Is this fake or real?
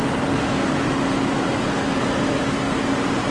real